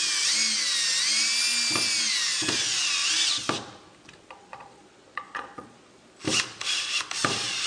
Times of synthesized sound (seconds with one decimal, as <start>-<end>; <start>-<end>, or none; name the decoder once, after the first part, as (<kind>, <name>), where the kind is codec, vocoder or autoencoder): 4.5-6.1 (vocoder, Vocos)